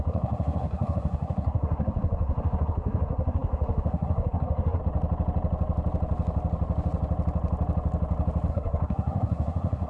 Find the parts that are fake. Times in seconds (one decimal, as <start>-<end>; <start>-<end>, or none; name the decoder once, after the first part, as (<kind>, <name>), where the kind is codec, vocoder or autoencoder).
0.0-4.8 (codec, SNAC); 8.5-9.9